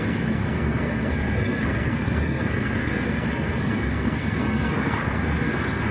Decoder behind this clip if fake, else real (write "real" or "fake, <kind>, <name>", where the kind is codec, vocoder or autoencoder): fake, codec, SNAC